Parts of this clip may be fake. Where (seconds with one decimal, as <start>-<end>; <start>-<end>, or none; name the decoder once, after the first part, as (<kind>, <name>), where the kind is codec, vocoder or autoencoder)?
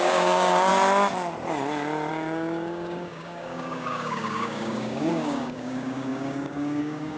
0.0-0.7 (codec, DAC); 2.1-7.2